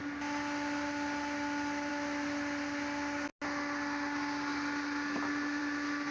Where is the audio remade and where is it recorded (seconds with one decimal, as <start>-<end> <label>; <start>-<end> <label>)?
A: 0.0-6.1 recorded